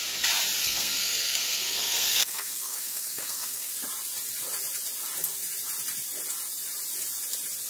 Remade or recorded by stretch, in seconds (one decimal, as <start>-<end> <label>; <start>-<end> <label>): 0.0-0.6 recorded; 0.6-3.7 remade; 3.7-7.7 recorded

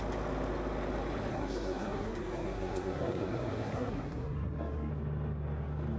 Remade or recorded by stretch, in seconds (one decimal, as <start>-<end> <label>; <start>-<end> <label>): 0.0-1.3 recorded; 1.3-4.9 remade; 4.9-6.0 recorded

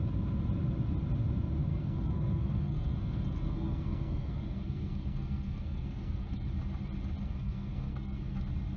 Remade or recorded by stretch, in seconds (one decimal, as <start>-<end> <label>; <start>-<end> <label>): 0.0-1.7 recorded; 1.7-6.5 remade; 6.5-7.2 recorded; 7.2-8.4 remade; 8.4-8.8 recorded